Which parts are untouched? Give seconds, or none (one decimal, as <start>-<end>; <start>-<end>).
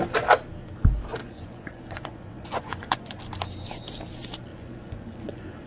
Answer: 0.0-1.2; 3.2-4.5